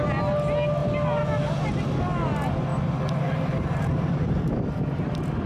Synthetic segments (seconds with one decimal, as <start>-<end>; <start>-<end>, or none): 2.7-5.0